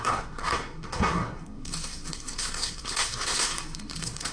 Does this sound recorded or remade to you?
remade